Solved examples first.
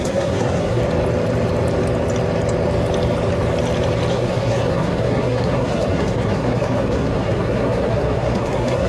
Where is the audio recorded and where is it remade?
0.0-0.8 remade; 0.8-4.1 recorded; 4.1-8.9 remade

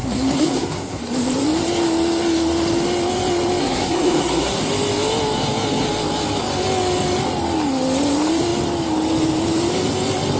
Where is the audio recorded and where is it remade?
0.0-1.0 remade; 1.0-3.6 recorded; 3.6-4.7 remade; 4.7-10.4 recorded

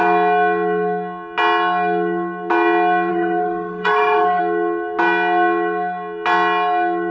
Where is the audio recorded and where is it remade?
0.0-3.1 recorded; 3.1-4.4 remade; 4.4-7.1 recorded

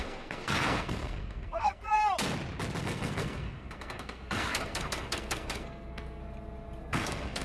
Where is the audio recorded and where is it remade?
0.0-2.0 remade; 2.0-2.8 recorded; 2.8-6.2 remade; 6.2-6.8 recorded; 6.8-7.4 remade